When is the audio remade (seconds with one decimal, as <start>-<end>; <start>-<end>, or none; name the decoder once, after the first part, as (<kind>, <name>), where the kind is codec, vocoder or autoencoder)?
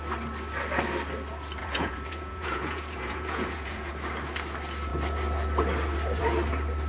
1.6-3.9 (vocoder, Vocos)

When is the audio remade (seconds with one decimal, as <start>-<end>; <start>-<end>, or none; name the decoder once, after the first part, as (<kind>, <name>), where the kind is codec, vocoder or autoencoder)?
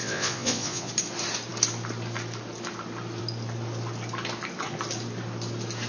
0.0-0.9 (vocoder, Vocos)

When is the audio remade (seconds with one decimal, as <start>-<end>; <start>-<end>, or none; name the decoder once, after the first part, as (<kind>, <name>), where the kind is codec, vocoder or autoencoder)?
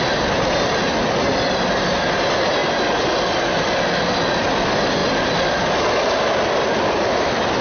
none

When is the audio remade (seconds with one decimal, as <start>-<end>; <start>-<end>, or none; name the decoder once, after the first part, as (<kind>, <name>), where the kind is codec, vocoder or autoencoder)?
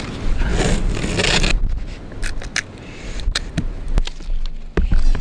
none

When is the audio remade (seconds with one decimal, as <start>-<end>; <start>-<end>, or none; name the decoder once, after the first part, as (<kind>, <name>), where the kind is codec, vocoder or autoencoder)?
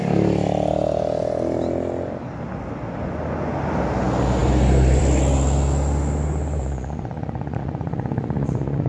6.6-8.9 (vocoder, Vocos)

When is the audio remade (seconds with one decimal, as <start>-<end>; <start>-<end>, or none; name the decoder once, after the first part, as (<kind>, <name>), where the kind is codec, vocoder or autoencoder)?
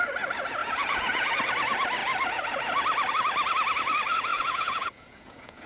0.6-1.3 (vocoder, Vocos); 4.3-5.7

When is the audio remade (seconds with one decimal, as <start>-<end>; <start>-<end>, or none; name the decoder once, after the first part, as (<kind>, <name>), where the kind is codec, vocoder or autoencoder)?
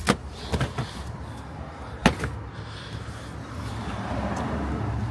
none